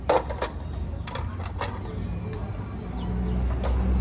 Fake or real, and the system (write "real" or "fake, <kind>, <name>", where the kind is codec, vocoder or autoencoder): real